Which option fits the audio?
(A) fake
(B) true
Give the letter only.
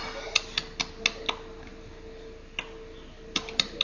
B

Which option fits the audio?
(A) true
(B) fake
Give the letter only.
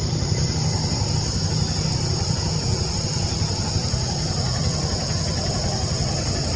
A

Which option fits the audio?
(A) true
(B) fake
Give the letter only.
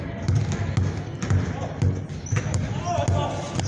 A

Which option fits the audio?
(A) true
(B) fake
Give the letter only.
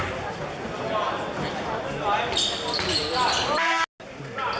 A